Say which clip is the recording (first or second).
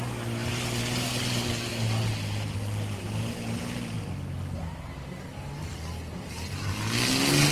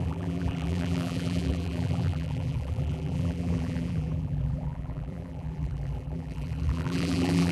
first